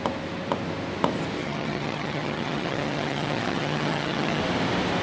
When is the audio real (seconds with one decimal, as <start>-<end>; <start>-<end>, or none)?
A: 0.0-1.4; 4.4-5.0